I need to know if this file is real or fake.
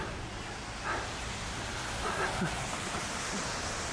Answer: real